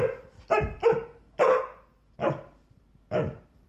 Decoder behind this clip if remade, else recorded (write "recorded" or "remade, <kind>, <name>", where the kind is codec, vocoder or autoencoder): recorded